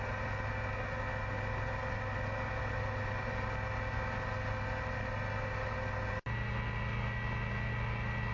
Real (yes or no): yes